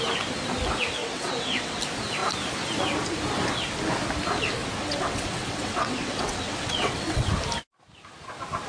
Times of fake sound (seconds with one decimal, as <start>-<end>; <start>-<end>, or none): 1.0-1.8; 4.8-7.3